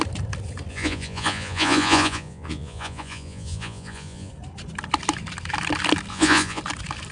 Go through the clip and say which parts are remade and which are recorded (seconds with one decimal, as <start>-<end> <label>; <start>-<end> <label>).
0.0-0.7 recorded; 0.7-4.3 remade; 4.3-6.1 recorded; 6.1-6.6 remade; 6.6-7.1 recorded